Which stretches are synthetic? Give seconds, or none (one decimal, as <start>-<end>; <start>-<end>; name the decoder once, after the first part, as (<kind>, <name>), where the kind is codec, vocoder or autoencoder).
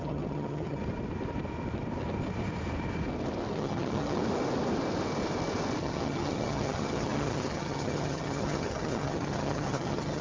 0.0-0.8 (vocoder, HiFi-GAN); 3.5-4.2; 5.8-10.2